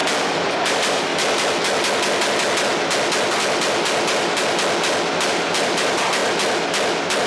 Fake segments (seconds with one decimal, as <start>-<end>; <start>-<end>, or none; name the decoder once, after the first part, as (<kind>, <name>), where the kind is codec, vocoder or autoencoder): 0.5-1.1 (vocoder, BigVGAN v2); 5.3-6.2